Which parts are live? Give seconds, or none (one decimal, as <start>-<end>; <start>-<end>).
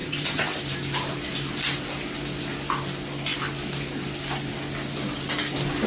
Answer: 0.6-5.9